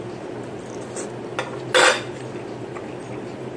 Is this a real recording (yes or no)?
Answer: yes